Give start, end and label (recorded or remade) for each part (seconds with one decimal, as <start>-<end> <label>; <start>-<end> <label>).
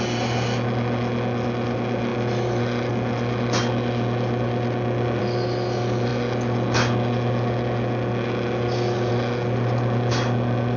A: 0.0-10.8 recorded